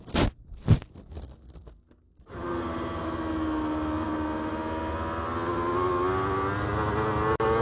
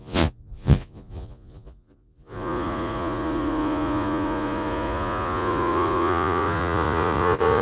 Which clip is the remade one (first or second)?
second